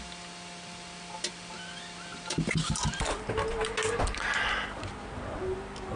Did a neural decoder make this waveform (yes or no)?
no